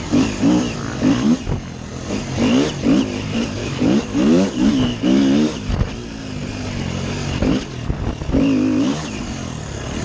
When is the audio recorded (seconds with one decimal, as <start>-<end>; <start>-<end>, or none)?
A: 0.0-3.6; 4.7-10.0